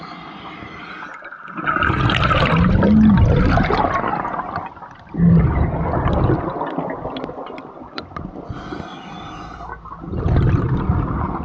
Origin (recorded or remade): recorded